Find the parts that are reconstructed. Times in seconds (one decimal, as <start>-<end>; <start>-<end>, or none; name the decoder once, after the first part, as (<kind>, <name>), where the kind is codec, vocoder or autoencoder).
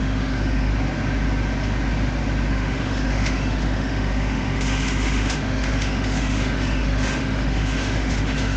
0.0-0.7 (autoencoder, DAC-VAE); 2.5-8.6